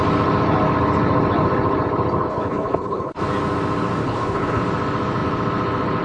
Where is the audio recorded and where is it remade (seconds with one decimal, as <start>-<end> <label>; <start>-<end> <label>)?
0.0-2.3 recorded; 2.3-3.2 remade; 3.2-4.0 recorded; 4.0-4.6 remade; 4.6-6.0 recorded